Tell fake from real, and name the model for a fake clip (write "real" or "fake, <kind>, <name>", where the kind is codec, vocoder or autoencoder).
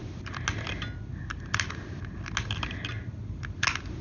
real